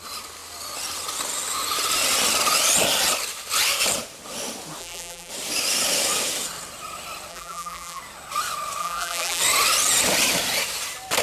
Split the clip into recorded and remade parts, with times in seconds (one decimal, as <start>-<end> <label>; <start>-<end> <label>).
0.0-4.8 recorded; 4.8-5.3 remade; 5.3-7.3 recorded; 7.3-8.0 remade; 8.0-8.8 recorded; 8.8-9.4 remade; 9.4-11.2 recorded